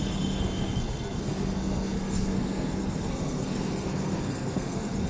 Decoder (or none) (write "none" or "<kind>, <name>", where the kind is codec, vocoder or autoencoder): codec, SNAC